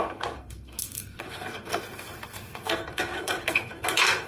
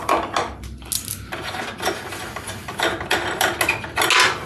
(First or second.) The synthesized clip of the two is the first